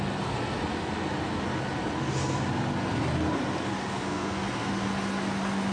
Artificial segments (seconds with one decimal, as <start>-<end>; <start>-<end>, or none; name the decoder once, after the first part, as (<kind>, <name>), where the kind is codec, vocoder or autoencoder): 3.8-4.7 (codec, SNAC)